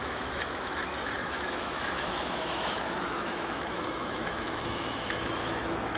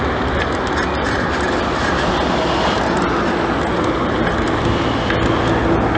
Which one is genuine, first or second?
second